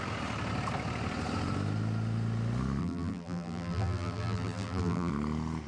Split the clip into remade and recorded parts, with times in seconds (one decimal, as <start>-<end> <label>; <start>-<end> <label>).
0.0-2.8 recorded; 2.8-5.1 remade; 5.1-5.7 recorded